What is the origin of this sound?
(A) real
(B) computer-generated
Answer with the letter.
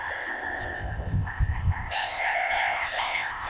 B